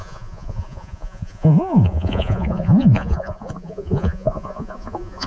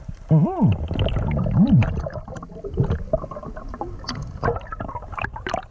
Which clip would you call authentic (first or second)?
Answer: second